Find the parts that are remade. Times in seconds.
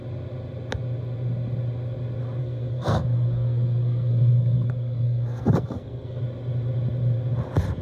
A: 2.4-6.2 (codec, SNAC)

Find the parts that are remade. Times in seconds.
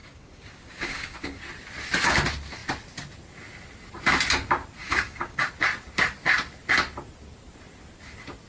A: 0.0-1.4 (codec, DAC); 4.8-5.5